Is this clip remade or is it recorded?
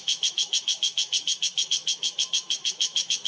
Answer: remade